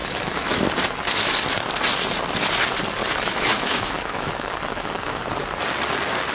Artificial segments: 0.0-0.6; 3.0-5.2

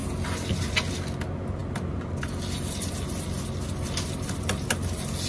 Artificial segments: none

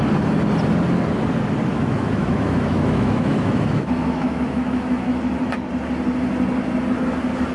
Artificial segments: 1.7-5.2

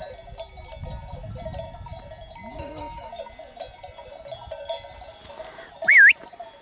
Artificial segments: 2.5-3.1

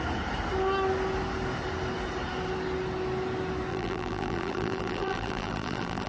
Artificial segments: 3.7-6.1